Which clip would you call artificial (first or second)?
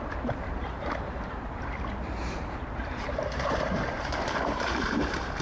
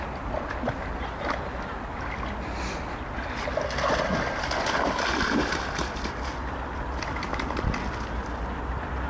first